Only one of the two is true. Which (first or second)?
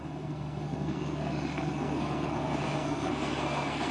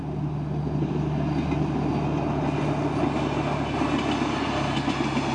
second